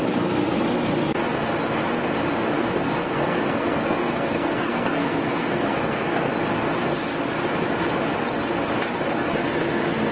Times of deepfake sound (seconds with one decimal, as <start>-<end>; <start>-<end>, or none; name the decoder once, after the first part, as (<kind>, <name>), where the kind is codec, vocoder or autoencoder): 2.5-6.3 (codec, SNAC)